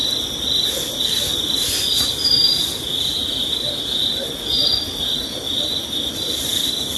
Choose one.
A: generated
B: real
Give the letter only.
B